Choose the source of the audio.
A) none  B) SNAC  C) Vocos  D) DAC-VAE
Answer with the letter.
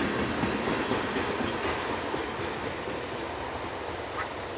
A